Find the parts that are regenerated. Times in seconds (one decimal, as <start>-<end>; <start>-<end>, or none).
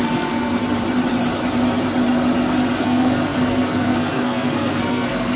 0.0-0.6; 2.8-5.4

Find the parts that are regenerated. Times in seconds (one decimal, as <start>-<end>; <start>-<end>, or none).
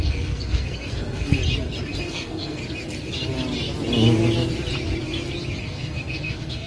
0.0-1.4; 2.0-2.6; 5.6-6.7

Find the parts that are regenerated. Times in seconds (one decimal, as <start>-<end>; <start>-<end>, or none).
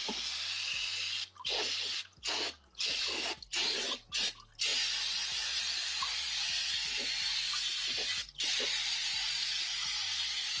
none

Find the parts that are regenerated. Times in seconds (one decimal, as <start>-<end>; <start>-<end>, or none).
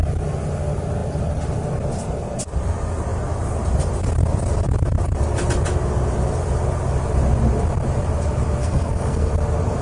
8.6-9.3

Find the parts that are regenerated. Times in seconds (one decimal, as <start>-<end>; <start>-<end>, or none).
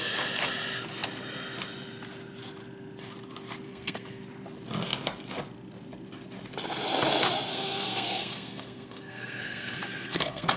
3.7-4.2; 7.5-10.6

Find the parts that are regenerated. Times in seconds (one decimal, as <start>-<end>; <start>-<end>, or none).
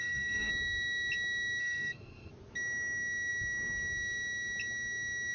0.0-0.5; 1.6-2.3